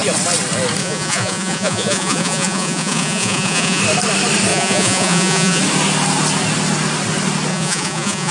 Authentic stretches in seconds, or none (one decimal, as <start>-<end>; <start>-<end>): 0.0-0.8; 3.8-4.5; 5.6-7.5